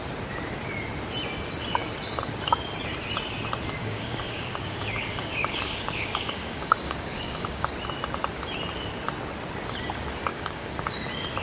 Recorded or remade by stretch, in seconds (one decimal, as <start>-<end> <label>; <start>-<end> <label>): 0.0-3.8 recorded; 3.8-7.7 remade; 7.7-10.3 recorded; 10.3-10.8 remade; 10.8-11.4 recorded